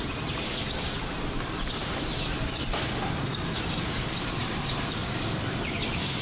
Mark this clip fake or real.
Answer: fake